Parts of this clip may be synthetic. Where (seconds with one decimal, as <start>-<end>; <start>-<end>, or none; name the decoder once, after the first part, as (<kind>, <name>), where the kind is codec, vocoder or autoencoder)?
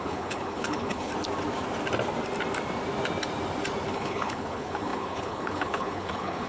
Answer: 0.0-1.1 (codec, HILCodec); 3.9-6.5